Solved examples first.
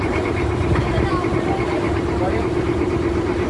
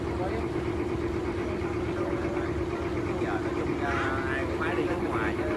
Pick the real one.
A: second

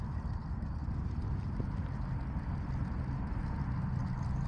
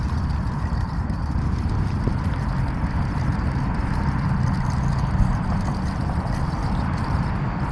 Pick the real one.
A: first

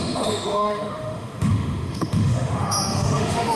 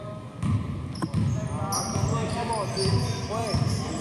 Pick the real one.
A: second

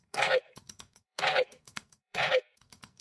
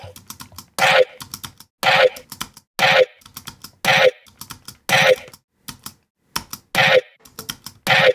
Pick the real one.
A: second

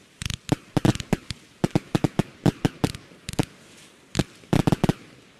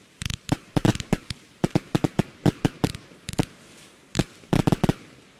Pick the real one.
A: first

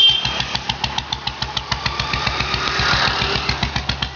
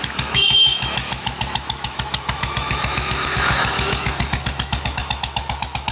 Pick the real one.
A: first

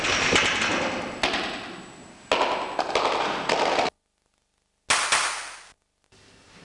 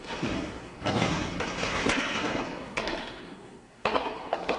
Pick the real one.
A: first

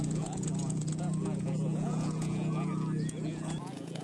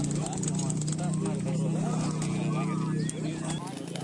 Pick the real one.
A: second